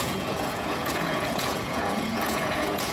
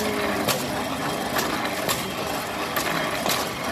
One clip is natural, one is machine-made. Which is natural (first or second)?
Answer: second